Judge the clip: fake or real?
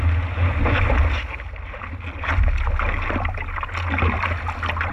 real